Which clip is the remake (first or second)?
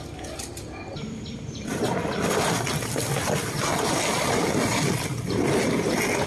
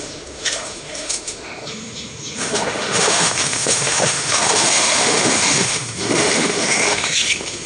second